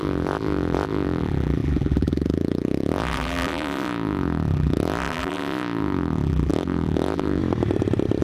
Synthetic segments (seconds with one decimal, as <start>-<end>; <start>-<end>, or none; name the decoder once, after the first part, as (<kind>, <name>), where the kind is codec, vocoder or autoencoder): 0.0-7.4 (vocoder, BigVGAN v2)

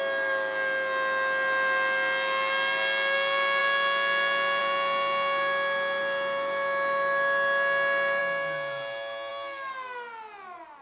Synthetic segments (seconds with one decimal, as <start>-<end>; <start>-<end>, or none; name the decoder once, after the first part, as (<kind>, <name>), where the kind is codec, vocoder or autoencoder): none

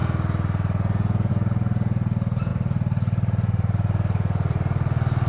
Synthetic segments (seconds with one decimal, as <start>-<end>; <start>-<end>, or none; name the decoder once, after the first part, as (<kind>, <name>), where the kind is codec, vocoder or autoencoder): 2.5-5.3 (vocoder, BigVGAN v2)

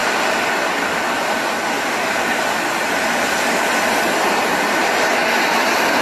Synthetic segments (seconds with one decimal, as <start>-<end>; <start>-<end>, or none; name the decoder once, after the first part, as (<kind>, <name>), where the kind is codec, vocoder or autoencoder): none

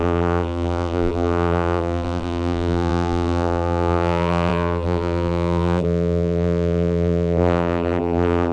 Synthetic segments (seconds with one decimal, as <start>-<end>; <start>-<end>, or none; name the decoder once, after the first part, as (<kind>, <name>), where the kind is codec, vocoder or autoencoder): 0.0-8.5 (vocoder, BigVGAN v2)

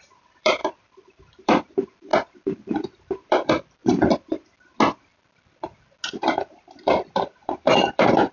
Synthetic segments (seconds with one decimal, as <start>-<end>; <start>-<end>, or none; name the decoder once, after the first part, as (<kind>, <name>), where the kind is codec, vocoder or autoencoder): 0.0-2.1 (vocoder, BigVGAN v2); 2.7-3.8; 6.2-8.3

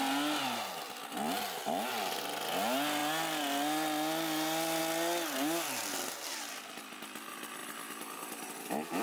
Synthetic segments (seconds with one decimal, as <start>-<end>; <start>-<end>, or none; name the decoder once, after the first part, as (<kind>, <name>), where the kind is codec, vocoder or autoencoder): 7.6-9.0 (vocoder, BigVGAN v2)

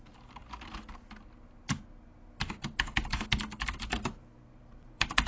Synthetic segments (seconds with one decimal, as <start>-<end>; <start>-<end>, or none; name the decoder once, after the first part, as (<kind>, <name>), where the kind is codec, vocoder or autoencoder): 0.0-0.4 (vocoder, BigVGAN v2); 3.6-5.3